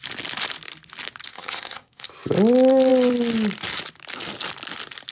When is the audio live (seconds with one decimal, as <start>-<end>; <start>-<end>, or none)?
0.0-1.3; 2.1-5.1

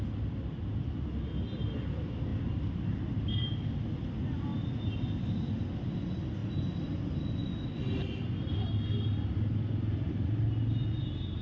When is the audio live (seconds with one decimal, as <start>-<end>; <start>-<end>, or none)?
0.0-11.4

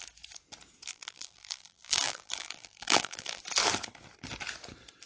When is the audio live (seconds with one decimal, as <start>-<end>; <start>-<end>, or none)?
0.0-0.9; 3.4-5.1

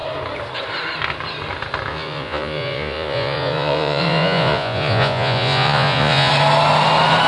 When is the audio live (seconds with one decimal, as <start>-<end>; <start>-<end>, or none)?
0.0-1.9; 6.3-7.3

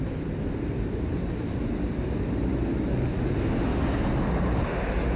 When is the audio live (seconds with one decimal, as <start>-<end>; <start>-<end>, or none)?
2.7-3.2; 3.7-4.4